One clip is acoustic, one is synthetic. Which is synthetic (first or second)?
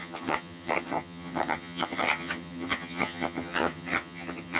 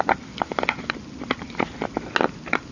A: first